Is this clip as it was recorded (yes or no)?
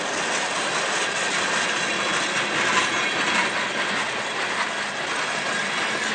yes